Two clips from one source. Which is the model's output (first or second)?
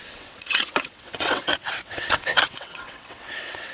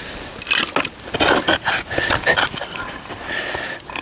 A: first